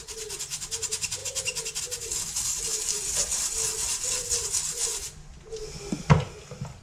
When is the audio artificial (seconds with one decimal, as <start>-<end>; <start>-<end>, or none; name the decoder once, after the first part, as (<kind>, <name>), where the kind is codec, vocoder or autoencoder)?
5.5-6.1 (vocoder, BigVGAN v2)